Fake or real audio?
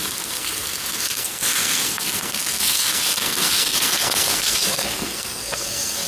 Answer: fake